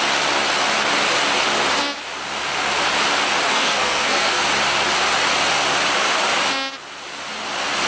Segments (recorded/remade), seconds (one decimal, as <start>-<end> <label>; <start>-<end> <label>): 0.0-3.5 recorded; 3.5-4.4 remade; 4.4-7.9 recorded